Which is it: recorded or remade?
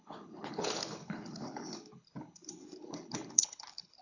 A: remade